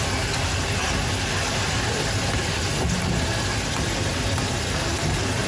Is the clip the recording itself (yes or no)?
yes